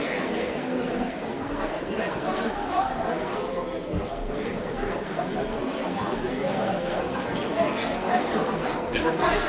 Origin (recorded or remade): remade